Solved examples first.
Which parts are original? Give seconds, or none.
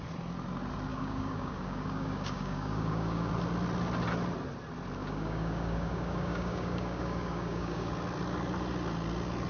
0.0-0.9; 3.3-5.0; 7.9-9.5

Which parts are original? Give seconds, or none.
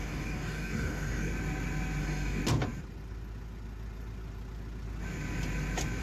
1.3-2.0; 2.4-6.0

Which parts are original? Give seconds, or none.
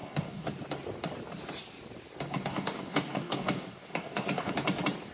0.5-2.3; 4.5-5.1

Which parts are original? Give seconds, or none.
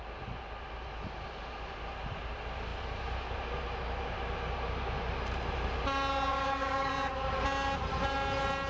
0.0-6.3; 6.9-8.7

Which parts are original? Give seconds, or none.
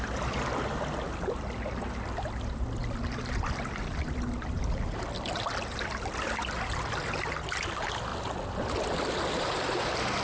0.0-10.2